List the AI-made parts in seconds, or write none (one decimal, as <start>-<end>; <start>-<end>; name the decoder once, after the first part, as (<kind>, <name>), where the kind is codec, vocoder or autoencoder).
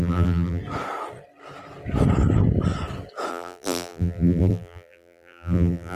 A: 0.0-0.6 (vocoder, BigVGAN v2); 3.3-5.9